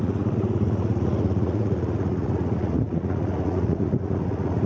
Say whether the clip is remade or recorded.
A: remade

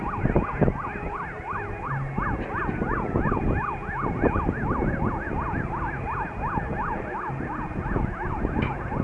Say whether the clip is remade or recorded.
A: recorded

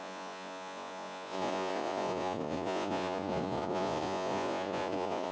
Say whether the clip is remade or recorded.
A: remade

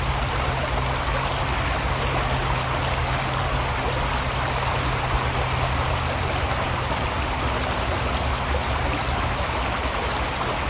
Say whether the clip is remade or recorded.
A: recorded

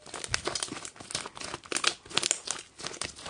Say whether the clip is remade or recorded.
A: recorded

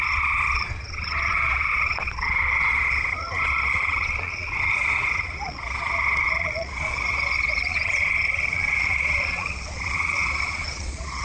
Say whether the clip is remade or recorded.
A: remade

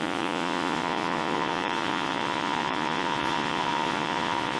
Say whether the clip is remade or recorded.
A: remade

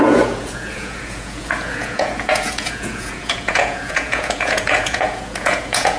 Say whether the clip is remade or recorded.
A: remade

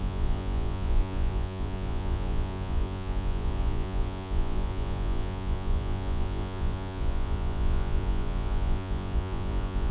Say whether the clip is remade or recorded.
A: remade